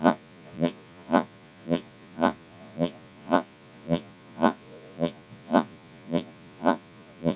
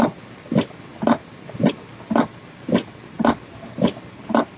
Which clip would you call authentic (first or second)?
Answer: second